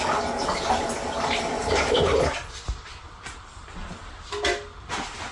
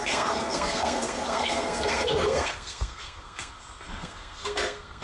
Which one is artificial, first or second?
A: second